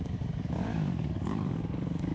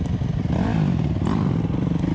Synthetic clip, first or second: first